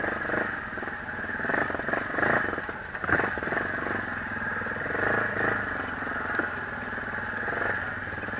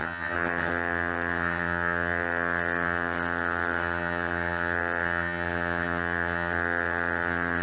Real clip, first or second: first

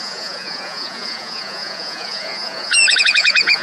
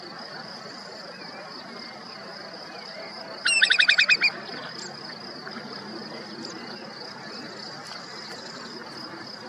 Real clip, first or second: second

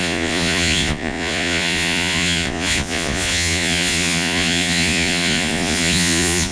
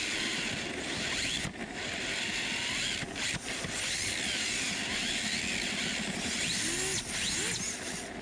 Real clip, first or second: second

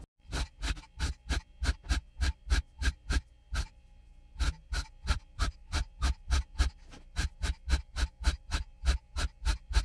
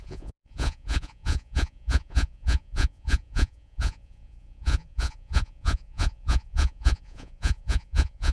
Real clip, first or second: first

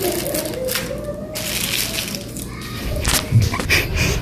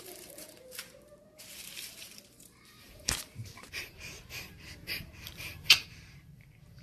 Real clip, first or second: first